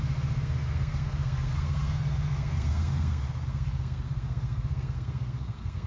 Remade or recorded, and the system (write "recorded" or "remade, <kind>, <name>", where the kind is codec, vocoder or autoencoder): remade, codec, SNAC